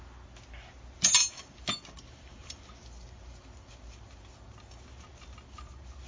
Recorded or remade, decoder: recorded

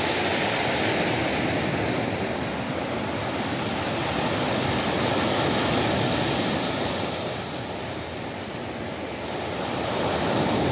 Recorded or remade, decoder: recorded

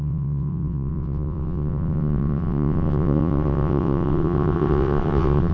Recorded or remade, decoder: remade, vocoder, WaveNeXt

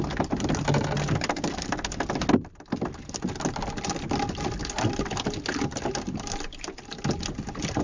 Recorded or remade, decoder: recorded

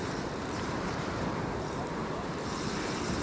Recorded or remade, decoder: remade, vocoder, BigVGAN v2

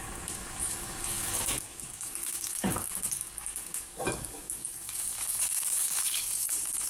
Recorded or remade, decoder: remade, codec, DAC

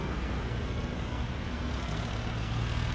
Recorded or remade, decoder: remade, codec, SNAC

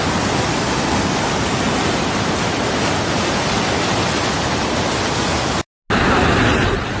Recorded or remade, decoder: recorded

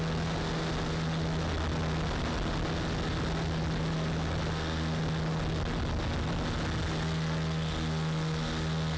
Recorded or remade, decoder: recorded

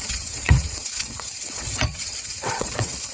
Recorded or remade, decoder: remade, vocoder, WaveNeXt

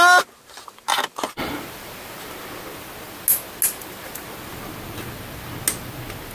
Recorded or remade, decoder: recorded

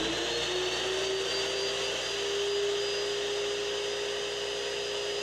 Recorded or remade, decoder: recorded